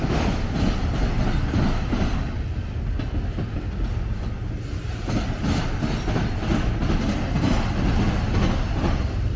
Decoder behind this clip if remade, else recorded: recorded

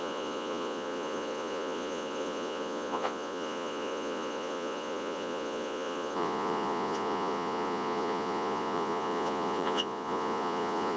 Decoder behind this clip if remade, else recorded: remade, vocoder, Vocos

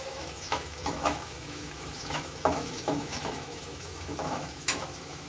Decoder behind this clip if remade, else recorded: remade, autoencoder, DAC-VAE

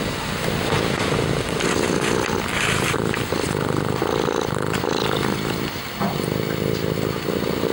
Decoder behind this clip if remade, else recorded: recorded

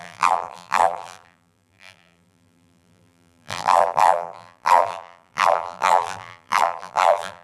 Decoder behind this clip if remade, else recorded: remade, vocoder, BigVGAN v2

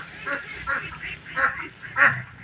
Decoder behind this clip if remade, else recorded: remade, vocoder, BigVGAN v2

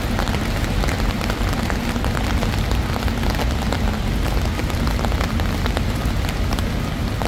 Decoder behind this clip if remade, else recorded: recorded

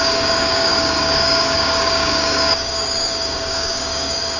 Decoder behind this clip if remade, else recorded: remade, codec, DAC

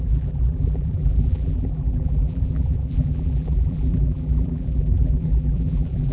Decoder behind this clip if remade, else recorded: remade, vocoder, BigVGAN v2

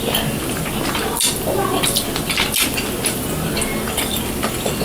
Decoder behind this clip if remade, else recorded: recorded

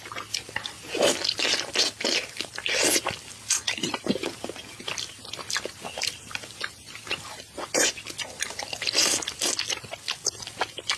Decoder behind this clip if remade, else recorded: recorded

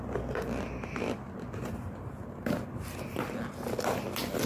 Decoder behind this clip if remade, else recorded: recorded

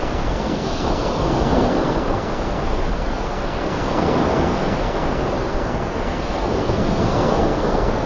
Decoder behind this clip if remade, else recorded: remade, codec, SNAC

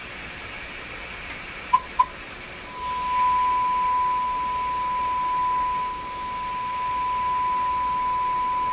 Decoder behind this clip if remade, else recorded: recorded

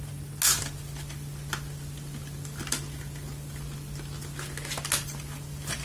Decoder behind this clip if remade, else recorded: recorded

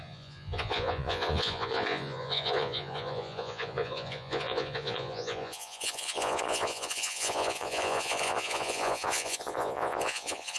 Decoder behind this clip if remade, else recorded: remade, vocoder, Vocos